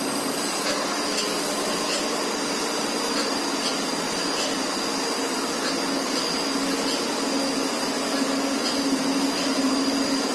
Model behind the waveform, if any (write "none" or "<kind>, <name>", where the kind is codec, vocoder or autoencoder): none